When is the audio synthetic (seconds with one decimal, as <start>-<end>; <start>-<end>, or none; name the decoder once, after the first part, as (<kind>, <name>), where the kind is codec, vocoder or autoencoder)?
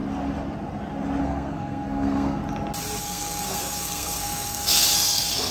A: 1.2-2.4 (codec, SNAC); 3.0-5.5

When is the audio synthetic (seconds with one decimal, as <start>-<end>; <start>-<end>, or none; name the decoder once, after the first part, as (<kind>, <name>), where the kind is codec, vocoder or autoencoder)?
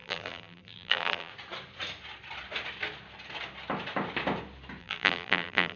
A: 0.0-1.3 (vocoder, BigVGAN v2); 4.8-5.8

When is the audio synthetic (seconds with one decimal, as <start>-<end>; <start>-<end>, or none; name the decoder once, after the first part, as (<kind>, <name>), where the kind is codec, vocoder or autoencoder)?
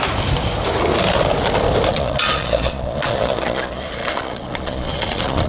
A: 1.9-5.5 (vocoder, Vocos)